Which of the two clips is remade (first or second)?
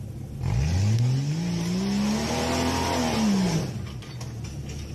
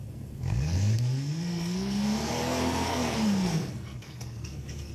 second